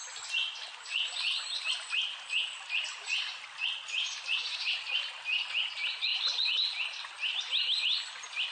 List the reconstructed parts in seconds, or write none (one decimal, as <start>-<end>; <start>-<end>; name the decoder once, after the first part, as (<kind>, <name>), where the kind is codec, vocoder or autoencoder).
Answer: none